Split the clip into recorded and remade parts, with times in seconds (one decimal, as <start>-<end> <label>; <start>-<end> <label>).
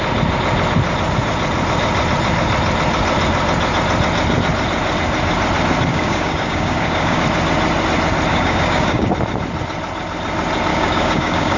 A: 0.0-5.9 recorded; 5.9-7.2 remade; 7.2-8.3 recorded; 8.3-9.1 remade; 9.1-10.7 recorded; 10.7-11.6 remade